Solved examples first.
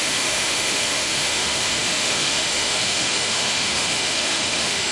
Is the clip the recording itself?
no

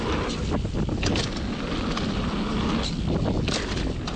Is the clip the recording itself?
yes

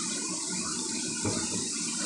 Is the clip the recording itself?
yes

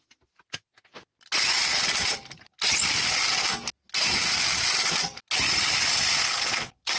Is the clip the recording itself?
yes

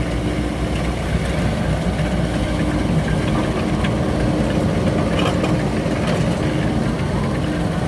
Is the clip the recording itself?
yes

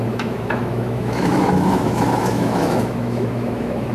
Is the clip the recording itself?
no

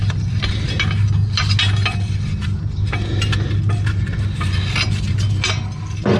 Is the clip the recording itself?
yes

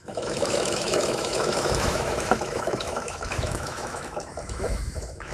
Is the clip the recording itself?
no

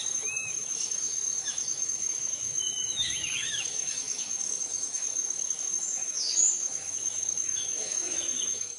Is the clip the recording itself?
no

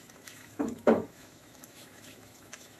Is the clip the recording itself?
no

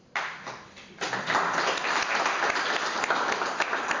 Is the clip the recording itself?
yes